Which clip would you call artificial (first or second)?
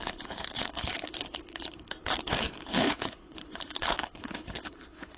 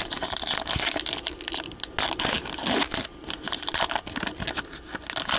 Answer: first